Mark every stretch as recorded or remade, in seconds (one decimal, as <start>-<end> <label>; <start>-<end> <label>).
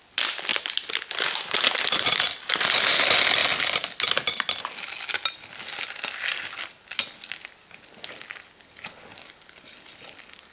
0.0-10.5 recorded